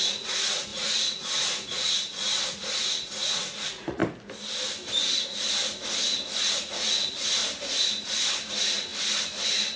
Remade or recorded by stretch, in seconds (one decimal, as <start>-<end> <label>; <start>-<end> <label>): 0.0-4.0 remade; 4.0-6.6 recorded; 6.6-7.4 remade; 7.4-8.5 recorded; 8.5-8.9 remade; 8.9-9.8 recorded